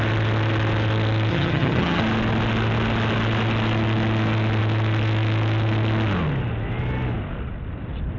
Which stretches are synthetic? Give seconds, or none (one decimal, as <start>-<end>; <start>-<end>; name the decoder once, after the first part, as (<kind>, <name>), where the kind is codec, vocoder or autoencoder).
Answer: 1.3-2.0 (vocoder, HiFi-GAN)